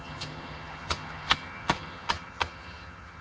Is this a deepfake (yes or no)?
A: yes